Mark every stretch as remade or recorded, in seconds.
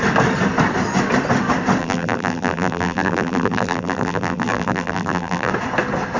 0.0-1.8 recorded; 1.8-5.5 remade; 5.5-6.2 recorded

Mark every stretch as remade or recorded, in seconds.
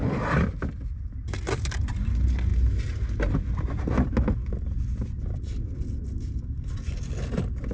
0.0-7.7 recorded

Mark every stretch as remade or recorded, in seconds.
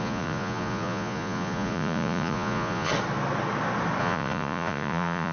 0.0-2.9 remade; 2.9-4.0 recorded; 4.0-5.3 remade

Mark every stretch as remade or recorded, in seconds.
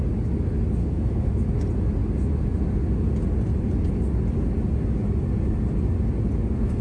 0.0-0.8 recorded; 0.8-1.3 remade; 1.3-6.8 recorded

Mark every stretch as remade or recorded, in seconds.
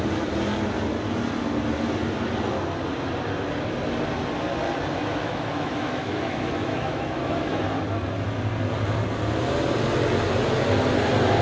0.0-5.1 recorded; 5.1-7.6 remade; 7.6-11.4 recorded